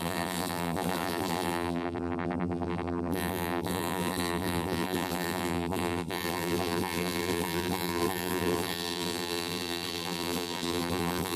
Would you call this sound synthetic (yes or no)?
yes